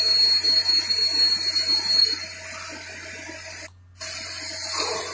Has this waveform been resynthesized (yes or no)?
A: no